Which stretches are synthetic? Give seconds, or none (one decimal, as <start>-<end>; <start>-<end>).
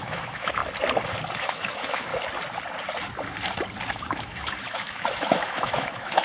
0.0-0.6; 1.4-2.1; 3.9-6.2